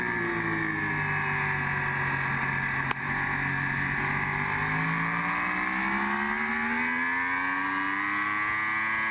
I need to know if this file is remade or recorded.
recorded